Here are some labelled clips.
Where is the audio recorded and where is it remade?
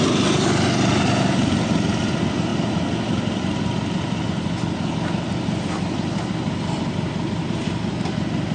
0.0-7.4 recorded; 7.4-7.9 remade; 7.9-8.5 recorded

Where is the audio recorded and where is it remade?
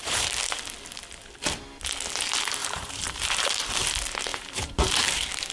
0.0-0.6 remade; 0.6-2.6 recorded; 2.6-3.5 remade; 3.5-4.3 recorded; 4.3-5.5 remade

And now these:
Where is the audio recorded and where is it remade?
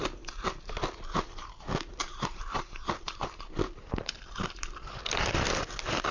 0.0-2.0 recorded; 2.0-5.0 remade; 5.0-6.1 recorded